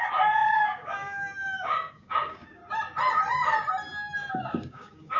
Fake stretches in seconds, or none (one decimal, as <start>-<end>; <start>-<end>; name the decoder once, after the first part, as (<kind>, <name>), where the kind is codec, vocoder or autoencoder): 0.0-2.6 (codec, DAC); 4.3-5.2